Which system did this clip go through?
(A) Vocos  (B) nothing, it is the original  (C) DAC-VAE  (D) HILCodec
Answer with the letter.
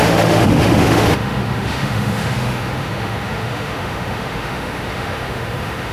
C